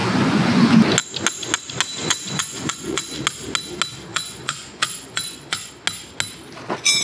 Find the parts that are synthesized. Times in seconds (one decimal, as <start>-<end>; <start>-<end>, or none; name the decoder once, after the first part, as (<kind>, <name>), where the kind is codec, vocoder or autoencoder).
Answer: 0.0-0.8 (vocoder, Vocos); 2.0-3.2; 4.1-5.7